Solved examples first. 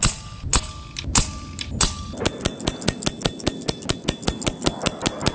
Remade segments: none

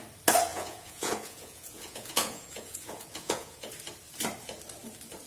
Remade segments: 0.5-3.7 (vocoder, Vocos)

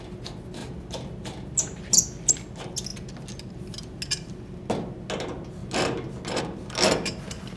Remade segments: none

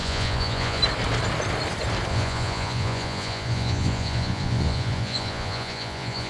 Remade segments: 0.0-0.8 (vocoder, Vocos); 2.1-6.3

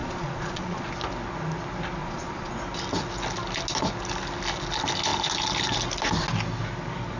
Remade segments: 0.0-0.9 (vocoder, Vocos); 2.0-2.5